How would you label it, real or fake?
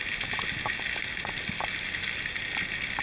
real